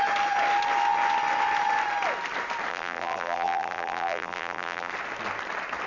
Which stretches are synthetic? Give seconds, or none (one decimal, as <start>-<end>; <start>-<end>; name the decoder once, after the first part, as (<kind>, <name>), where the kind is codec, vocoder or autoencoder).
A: 2.7-4.9 (vocoder, BigVGAN v2)